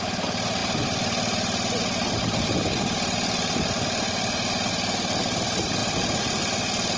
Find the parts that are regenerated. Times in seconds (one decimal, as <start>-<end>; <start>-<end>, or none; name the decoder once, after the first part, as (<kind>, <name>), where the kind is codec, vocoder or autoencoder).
none